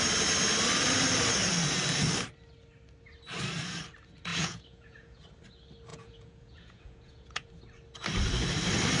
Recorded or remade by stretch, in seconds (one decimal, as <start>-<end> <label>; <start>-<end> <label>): 0.0-4.3 recorded; 4.3-5.2 remade; 5.2-5.9 recorded; 5.9-7.5 remade; 7.5-9.0 recorded